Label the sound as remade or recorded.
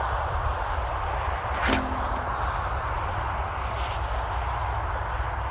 recorded